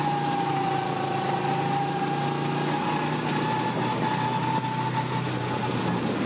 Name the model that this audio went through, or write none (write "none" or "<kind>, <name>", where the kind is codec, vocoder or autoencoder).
none